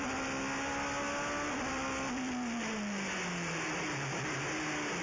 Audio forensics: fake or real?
real